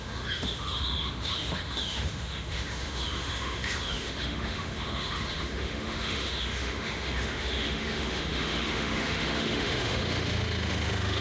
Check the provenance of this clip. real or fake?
fake